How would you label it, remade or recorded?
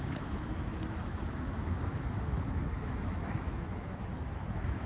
remade